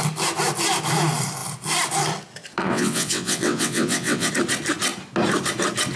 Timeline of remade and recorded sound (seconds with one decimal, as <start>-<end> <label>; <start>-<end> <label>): 0.0-2.6 recorded; 2.6-4.3 remade; 4.3-6.0 recorded